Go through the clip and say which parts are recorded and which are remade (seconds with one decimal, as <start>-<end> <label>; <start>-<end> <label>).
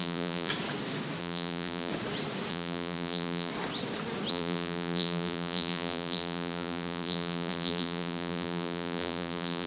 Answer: 0.0-0.5 remade; 0.5-1.2 recorded; 1.2-1.9 remade; 1.9-2.5 recorded; 2.5-3.5 remade; 3.5-4.3 recorded; 4.3-9.7 remade